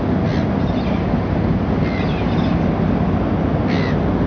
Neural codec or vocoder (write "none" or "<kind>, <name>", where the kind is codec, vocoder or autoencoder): none